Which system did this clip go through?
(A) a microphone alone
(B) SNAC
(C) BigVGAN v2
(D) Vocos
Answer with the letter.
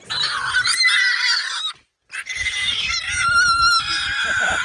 A